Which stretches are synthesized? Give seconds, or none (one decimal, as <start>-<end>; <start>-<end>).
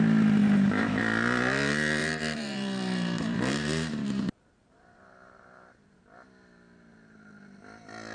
0.4-1.0; 2.0-6.0